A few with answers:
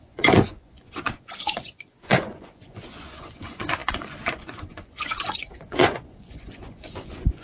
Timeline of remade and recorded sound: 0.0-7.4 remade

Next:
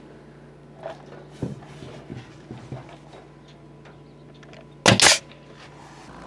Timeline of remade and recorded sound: 0.0-6.3 recorded